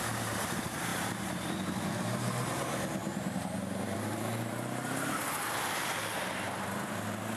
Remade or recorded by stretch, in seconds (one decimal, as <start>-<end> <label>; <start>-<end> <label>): 0.0-0.9 recorded; 0.9-2.5 remade; 2.5-3.0 recorded; 3.0-5.1 remade; 5.1-7.4 recorded

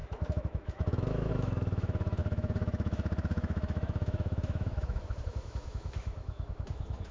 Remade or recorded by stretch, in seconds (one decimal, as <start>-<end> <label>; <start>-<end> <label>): 0.0-7.1 remade

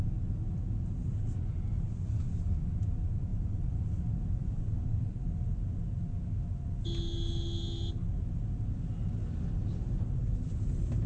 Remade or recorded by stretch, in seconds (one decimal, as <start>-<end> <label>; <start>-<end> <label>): 0.0-3.3 recorded; 3.3-4.5 remade; 4.5-11.1 recorded